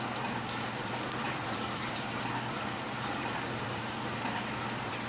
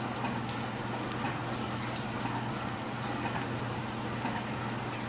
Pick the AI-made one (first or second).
first